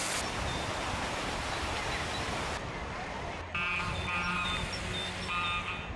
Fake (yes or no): no